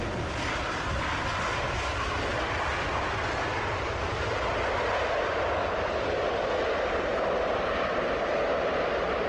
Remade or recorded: remade